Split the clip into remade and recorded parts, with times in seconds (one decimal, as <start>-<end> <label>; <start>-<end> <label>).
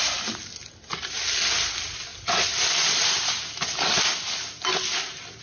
0.0-5.4 recorded